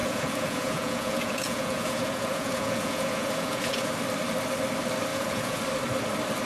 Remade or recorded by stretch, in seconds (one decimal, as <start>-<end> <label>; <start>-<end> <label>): 0.0-3.9 remade; 3.9-5.1 recorded; 5.1-5.6 remade; 5.6-6.5 recorded